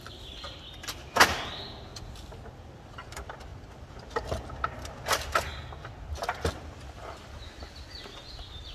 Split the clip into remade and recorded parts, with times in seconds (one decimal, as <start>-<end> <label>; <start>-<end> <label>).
0.0-1.9 remade; 1.9-2.5 recorded; 2.5-5.5 remade; 5.5-8.1 recorded; 8.1-8.7 remade